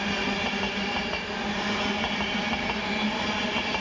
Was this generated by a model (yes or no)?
no